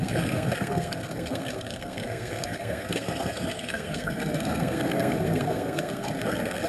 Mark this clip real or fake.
fake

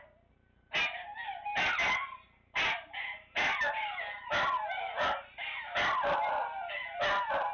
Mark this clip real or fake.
real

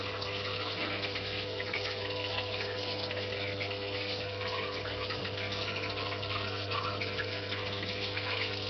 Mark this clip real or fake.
fake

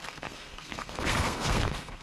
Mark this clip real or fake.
fake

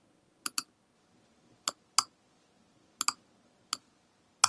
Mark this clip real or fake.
real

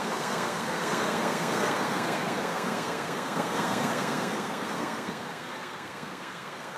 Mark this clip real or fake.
fake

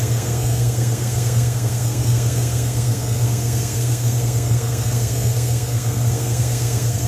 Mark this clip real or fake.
fake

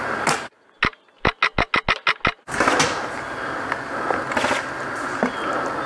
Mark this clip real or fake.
real